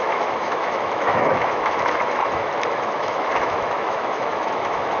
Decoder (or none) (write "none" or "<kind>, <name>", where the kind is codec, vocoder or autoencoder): autoencoder, DAC-VAE